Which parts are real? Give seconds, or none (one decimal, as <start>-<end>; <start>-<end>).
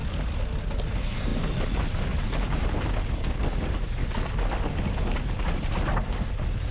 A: 0.0-4.0; 4.8-6.7